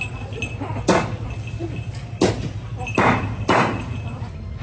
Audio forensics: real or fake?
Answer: real